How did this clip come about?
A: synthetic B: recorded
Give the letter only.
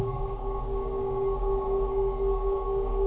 A